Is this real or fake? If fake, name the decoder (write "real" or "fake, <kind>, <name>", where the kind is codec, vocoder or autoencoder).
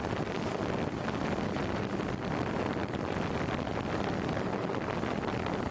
real